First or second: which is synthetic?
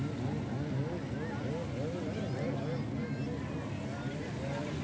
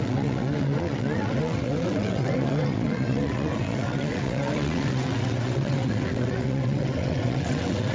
second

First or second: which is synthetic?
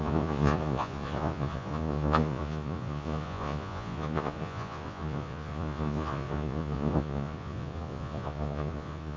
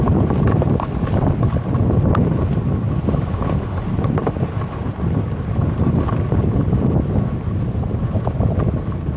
first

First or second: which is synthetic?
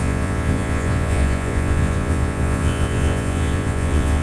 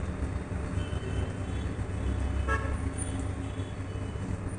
first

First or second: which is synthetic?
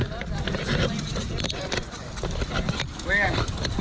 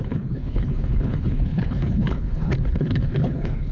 second